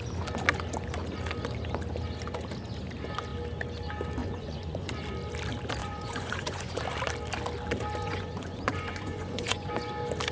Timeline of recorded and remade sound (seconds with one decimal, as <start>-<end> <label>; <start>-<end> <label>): 0.0-4.2 recorded; 4.2-4.9 remade; 4.9-5.8 recorded; 5.8-6.8 remade; 6.8-8.0 recorded; 8.0-9.7 remade; 9.7-10.3 recorded

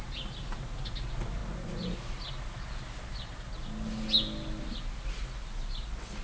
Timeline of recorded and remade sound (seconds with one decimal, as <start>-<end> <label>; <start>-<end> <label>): 0.0-6.2 recorded

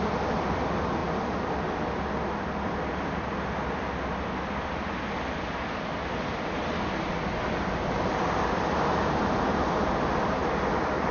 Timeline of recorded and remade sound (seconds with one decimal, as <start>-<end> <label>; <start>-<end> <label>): 0.0-11.1 recorded

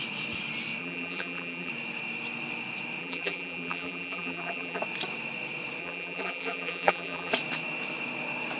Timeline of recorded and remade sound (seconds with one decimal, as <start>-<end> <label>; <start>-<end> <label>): 0.0-0.8 recorded; 0.8-1.7 remade; 1.7-3.0 recorded; 3.0-4.8 remade; 4.8-5.8 recorded; 5.8-7.3 remade; 7.3-8.6 recorded

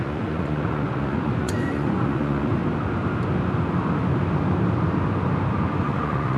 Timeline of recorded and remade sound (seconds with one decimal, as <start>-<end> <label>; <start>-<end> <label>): 0.0-2.6 remade; 2.6-5.8 recorded; 5.8-6.4 remade

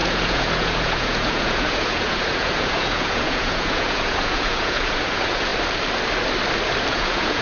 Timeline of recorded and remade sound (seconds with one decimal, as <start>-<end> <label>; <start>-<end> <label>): 0.0-5.5 remade; 5.5-6.9 recorded; 6.9-7.4 remade